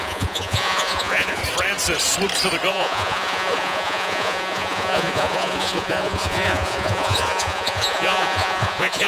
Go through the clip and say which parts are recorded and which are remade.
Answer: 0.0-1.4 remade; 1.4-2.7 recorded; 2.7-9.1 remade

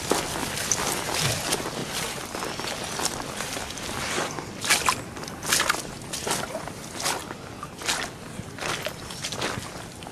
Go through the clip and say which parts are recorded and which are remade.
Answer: 0.0-10.1 recorded

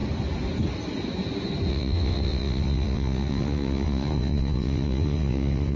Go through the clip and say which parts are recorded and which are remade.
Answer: 0.0-1.7 recorded; 1.7-5.8 remade

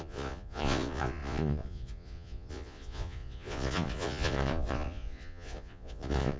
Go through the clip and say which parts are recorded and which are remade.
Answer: 0.0-6.4 remade